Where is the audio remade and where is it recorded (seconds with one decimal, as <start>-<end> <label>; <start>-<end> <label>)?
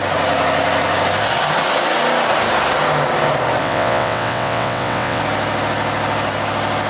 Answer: 0.0-3.6 recorded; 3.6-5.2 remade; 5.2-6.9 recorded